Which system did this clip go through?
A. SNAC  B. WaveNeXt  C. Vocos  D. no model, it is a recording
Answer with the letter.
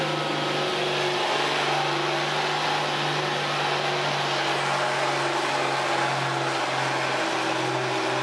D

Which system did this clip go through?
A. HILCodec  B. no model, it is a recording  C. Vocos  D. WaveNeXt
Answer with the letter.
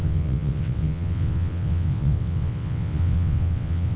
D